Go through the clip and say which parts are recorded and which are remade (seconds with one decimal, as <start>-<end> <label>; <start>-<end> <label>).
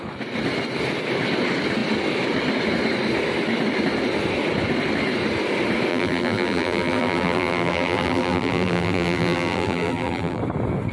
0.0-5.9 recorded; 5.9-10.4 remade; 10.4-10.9 recorded